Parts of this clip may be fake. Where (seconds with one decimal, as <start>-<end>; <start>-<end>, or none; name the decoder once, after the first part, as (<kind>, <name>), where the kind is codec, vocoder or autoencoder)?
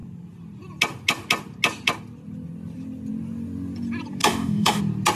4.2-4.8 (autoencoder, DAC-VAE)